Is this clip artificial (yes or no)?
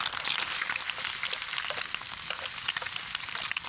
no